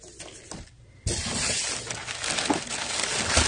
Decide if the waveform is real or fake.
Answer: real